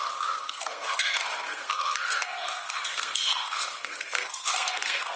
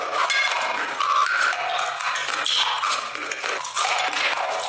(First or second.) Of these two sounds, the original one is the second